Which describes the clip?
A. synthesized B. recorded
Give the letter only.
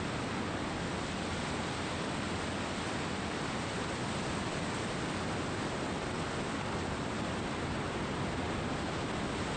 B